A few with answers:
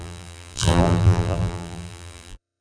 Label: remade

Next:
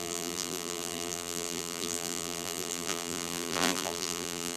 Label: remade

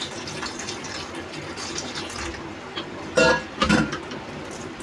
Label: recorded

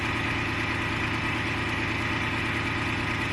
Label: recorded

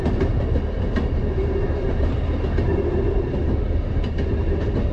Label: recorded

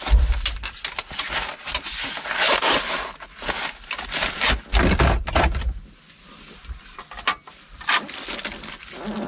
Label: recorded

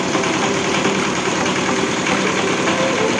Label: remade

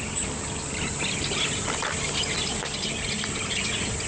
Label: recorded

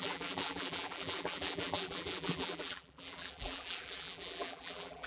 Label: remade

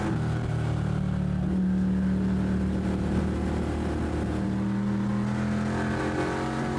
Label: recorded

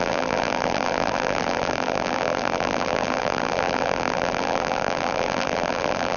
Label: remade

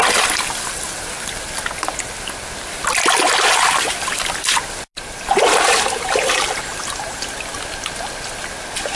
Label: recorded